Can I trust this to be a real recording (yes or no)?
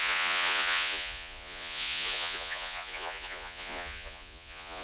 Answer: no